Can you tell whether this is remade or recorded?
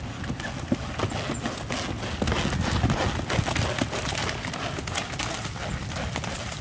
recorded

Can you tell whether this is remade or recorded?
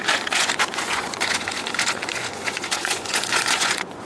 remade